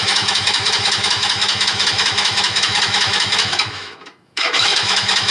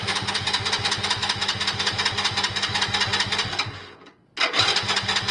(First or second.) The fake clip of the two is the first